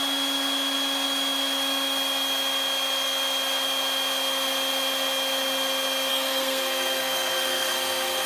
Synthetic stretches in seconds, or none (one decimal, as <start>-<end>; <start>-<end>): 6.1-8.3